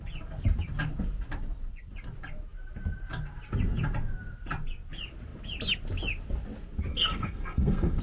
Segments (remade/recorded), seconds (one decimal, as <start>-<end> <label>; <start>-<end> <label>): 0.0-6.9 recorded; 6.9-8.0 remade